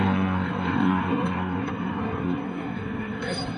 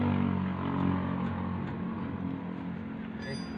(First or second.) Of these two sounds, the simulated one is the first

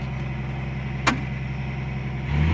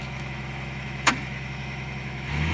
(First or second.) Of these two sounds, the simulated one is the second